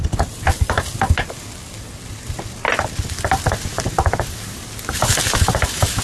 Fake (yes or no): no